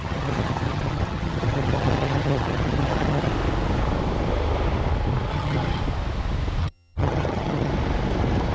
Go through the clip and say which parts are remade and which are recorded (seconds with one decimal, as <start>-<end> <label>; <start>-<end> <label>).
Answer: 0.0-3.3 remade; 3.3-5.3 recorded; 5.3-5.8 remade; 5.8-6.6 recorded; 6.6-7.7 remade; 7.7-8.5 recorded